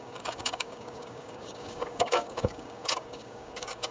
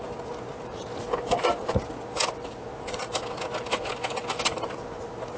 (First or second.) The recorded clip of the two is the second